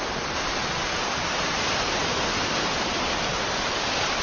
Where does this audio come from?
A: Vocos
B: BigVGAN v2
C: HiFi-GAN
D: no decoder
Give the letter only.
D